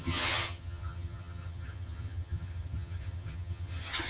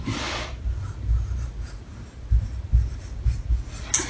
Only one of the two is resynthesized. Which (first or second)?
first